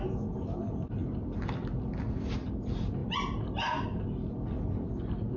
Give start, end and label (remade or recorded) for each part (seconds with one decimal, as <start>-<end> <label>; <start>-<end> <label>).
0.0-5.4 recorded